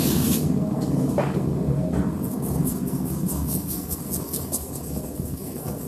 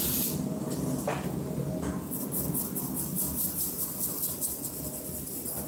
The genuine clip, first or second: second